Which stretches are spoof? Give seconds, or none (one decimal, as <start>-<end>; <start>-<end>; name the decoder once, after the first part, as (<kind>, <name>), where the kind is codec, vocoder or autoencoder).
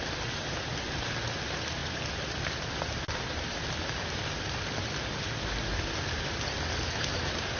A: none